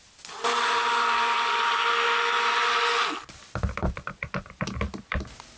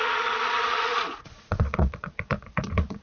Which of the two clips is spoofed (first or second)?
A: second